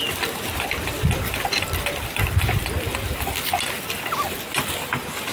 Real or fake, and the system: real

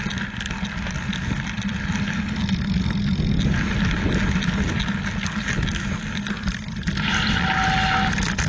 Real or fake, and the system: real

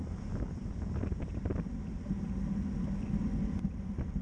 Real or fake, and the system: real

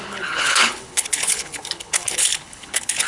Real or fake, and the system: fake, codec, HILCodec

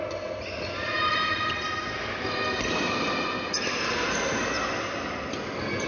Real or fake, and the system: real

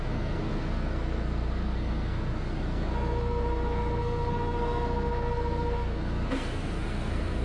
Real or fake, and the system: fake, codec, SNAC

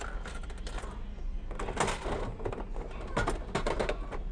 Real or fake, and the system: real